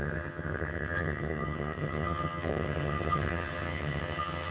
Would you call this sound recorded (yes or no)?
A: no